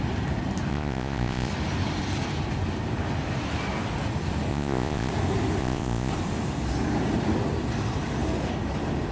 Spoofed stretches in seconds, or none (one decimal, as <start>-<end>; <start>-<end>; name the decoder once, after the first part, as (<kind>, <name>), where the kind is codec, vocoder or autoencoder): 0.7-1.5 (vocoder, Vocos); 4.5-5.1; 5.6-6.1